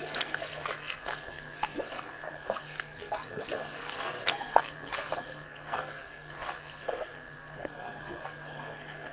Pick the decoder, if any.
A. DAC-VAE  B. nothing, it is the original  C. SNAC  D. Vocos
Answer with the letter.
C